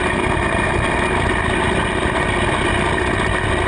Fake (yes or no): no